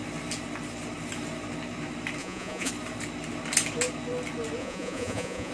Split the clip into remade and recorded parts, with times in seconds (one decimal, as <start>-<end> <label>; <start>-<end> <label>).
0.0-2.2 recorded; 2.2-2.7 remade; 2.7-4.6 recorded; 4.6-5.5 remade